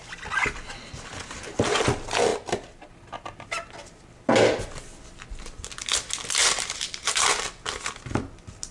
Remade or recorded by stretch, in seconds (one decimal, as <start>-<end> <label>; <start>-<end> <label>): 0.0-2.3 recorded; 2.3-2.9 remade; 2.9-6.4 recorded; 6.4-7.3 remade; 7.3-8.7 recorded